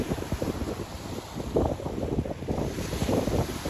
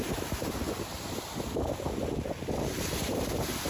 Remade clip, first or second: first